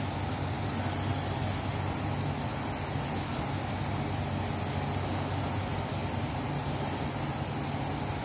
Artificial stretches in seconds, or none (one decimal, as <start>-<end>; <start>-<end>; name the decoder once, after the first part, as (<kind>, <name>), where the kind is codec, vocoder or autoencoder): none